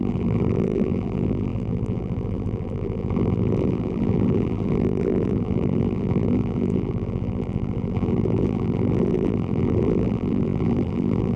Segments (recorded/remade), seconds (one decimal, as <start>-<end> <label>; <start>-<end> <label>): 0.0-11.4 remade